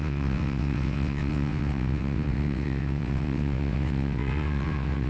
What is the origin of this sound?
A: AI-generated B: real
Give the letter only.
A